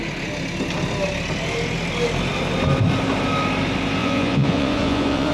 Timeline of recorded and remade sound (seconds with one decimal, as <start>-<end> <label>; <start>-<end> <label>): 0.0-4.0 recorded; 4.0-5.3 remade